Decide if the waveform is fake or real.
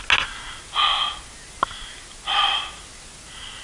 real